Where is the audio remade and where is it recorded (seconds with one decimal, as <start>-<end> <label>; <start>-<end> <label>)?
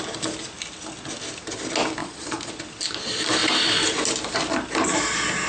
0.0-2.0 recorded; 2.0-2.5 remade; 2.5-5.5 recorded